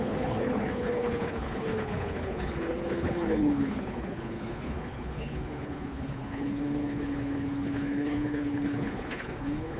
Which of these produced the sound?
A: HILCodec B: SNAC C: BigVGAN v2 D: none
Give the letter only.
A